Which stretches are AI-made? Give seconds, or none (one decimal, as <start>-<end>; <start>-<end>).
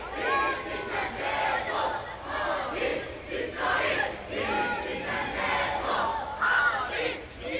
6.1-6.6